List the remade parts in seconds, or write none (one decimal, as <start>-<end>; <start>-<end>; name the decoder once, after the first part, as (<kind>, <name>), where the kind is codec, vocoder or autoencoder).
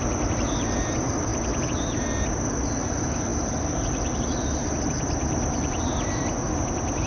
none